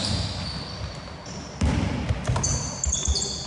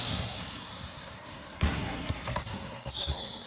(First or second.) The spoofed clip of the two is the second